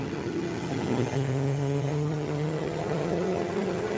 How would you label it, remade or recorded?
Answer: remade